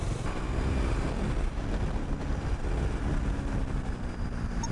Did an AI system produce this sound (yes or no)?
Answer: no